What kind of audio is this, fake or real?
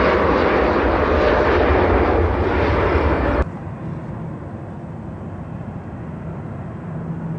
real